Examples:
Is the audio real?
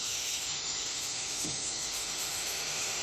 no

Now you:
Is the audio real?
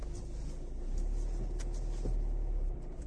yes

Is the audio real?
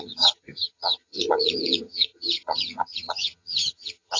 no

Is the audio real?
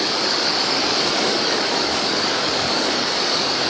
no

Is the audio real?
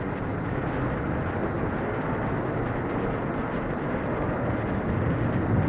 yes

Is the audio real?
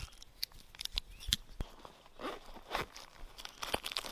yes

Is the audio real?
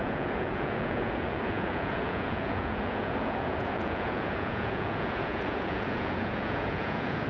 no